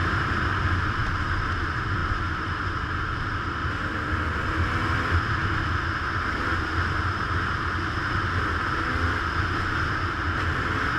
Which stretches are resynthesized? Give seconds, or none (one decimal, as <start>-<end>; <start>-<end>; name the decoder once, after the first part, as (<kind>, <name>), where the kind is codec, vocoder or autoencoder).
none

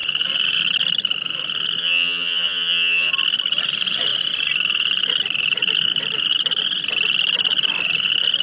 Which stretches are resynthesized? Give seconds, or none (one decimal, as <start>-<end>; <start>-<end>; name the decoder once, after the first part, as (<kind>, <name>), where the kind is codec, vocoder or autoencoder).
1.8-3.1 (vocoder, HiFi-GAN)

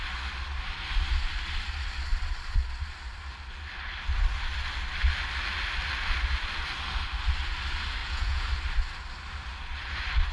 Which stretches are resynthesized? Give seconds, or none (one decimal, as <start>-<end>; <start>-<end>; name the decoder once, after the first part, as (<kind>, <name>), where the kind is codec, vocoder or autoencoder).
8.0-8.5 (vocoder, Vocos)

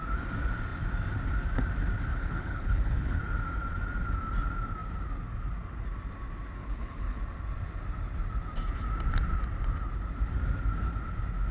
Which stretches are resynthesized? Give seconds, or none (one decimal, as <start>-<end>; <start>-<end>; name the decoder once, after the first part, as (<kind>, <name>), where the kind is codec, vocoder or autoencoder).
2.1-3.2 (codec, HILCodec); 6.6-7.2

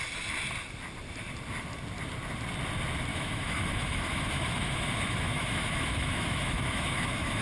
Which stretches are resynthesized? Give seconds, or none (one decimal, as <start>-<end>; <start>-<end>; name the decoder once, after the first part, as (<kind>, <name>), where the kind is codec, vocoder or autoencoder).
3.1-7.4 (autoencoder, DAC-VAE)

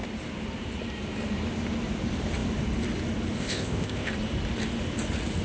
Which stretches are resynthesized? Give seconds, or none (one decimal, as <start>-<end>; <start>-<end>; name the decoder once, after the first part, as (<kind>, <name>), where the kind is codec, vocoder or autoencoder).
3.4-4.1 (codec, ZipCodec)

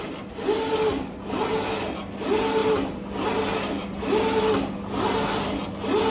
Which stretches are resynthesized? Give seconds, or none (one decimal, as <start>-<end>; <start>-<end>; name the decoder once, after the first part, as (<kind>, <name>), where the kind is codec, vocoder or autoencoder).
none